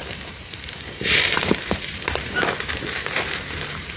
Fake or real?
fake